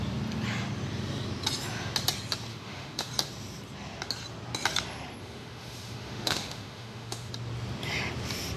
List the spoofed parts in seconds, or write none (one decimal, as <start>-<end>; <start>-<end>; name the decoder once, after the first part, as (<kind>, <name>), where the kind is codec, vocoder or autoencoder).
2.5-3.1 (autoencoder, DAC-VAE); 5.2-7.3